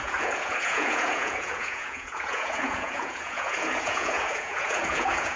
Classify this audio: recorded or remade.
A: remade